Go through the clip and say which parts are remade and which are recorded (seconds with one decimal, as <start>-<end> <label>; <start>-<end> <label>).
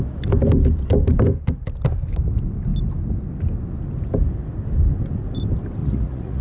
0.0-5.8 recorded; 5.8-6.4 remade